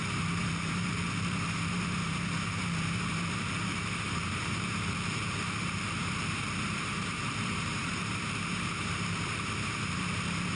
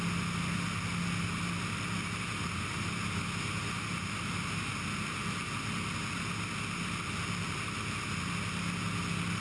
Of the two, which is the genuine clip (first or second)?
second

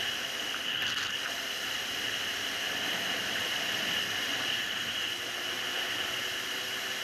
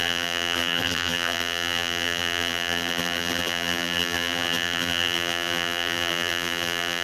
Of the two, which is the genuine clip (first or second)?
first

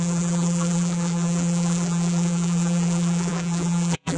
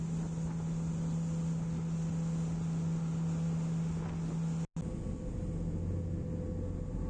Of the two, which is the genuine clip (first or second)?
second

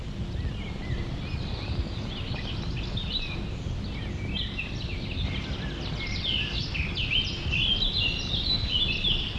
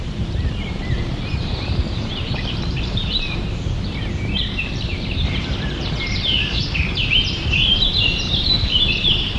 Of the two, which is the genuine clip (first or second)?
first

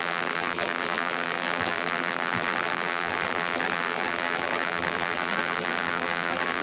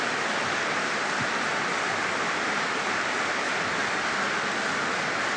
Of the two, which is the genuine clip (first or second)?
second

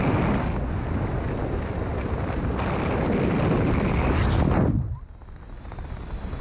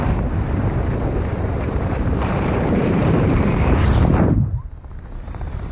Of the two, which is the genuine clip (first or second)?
first